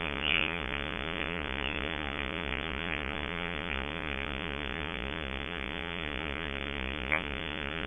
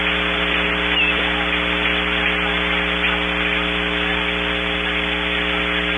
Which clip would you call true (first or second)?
second